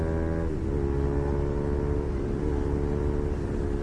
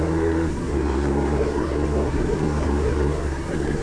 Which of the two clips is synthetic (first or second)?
second